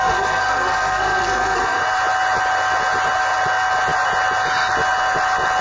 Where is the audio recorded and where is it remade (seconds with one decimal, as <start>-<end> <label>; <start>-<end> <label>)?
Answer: 0.0-1.8 remade; 1.8-5.6 recorded